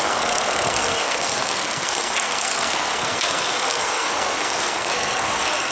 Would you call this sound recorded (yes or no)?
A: no